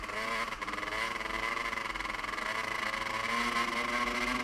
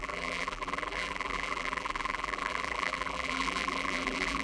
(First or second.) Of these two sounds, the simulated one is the second